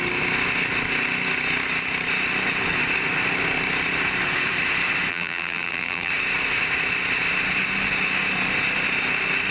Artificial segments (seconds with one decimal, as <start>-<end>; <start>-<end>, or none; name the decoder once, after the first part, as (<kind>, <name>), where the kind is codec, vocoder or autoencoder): 5.1-6.1 (vocoder, BigVGAN v2)

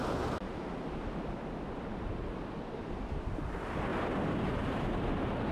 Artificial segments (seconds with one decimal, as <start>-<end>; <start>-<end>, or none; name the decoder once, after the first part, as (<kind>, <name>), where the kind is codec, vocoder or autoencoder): 3.9-4.9 (vocoder, BigVGAN v2)

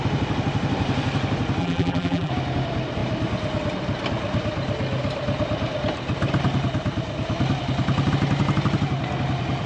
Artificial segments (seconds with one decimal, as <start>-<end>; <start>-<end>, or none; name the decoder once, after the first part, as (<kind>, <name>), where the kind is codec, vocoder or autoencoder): 1.6-2.3 (vocoder, BigVGAN v2)

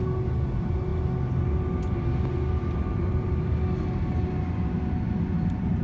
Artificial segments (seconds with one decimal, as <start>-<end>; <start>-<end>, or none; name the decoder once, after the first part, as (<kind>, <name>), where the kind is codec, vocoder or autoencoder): none

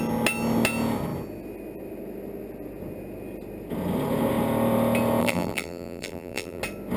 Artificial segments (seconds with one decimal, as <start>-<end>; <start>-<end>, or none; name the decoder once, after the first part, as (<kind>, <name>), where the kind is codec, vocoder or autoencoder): 5.2-6.6 (vocoder, BigVGAN v2)